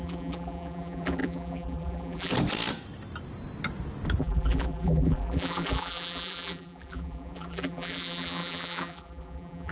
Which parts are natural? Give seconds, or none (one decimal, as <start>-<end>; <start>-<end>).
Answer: 2.3-4.2